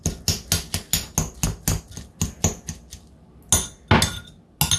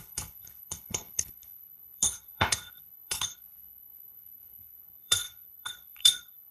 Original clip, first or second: first